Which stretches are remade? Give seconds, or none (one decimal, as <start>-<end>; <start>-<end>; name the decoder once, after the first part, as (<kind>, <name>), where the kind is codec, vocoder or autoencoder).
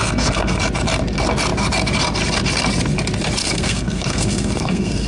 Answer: 0.0-0.6 (codec, SNAC); 3.4-5.1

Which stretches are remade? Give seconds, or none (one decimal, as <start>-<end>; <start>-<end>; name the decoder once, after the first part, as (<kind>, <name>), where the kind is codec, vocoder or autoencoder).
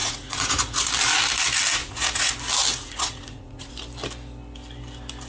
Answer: 0.0-0.9 (vocoder, Vocos); 1.8-2.3; 2.7-3.7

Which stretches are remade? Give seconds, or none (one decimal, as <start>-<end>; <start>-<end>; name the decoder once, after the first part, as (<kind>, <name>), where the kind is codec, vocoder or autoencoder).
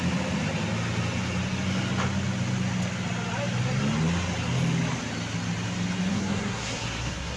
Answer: 6.1-7.4 (codec, SNAC)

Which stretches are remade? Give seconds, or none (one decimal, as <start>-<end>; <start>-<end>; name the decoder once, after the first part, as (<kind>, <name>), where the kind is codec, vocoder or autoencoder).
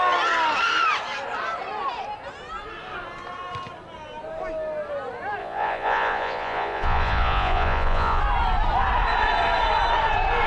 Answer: 5.4-8.2 (vocoder, Vocos)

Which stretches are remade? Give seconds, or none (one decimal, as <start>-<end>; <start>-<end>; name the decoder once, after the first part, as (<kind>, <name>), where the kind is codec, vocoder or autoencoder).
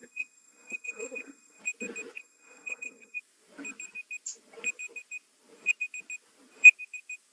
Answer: 0.0-1.6 (codec, SNAC); 2.2-3.2